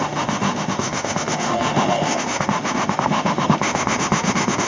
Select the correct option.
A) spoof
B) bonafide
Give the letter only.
A